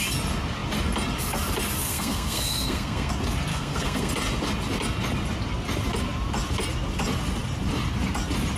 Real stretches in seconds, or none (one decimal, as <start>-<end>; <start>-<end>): 0.0-1.8; 3.1-3.5; 4.1-8.6